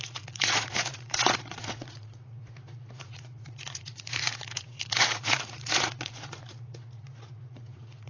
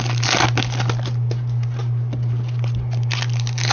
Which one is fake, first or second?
first